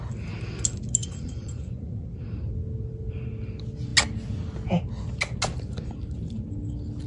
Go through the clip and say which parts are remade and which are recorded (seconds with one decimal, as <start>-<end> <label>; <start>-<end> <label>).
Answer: 0.0-1.0 recorded; 1.0-2.0 remade; 2.0-7.1 recorded